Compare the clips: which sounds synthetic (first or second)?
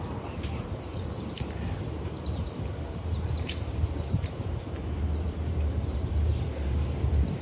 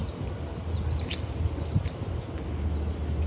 first